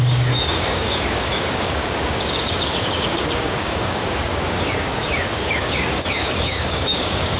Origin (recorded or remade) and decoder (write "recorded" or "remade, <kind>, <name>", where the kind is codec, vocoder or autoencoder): remade, codec, DAC